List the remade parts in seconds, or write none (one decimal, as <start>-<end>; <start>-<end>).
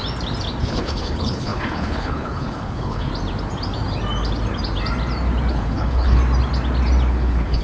0.6-3.1; 5.5-6.2; 7.1-7.6